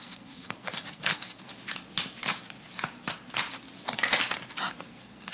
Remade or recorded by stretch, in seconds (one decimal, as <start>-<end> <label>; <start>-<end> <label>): 0.0-1.5 remade; 1.5-4.7 recorded; 4.7-5.3 remade